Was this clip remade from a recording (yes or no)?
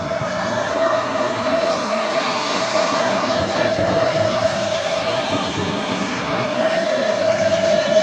yes